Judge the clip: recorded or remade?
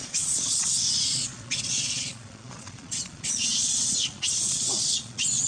remade